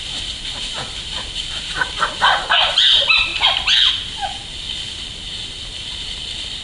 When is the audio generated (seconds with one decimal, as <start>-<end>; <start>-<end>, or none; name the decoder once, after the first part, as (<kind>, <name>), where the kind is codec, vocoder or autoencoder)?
none